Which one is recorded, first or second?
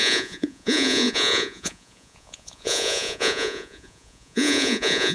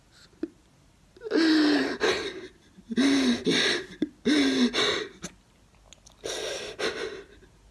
second